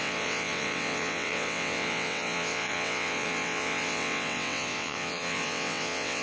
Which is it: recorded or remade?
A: remade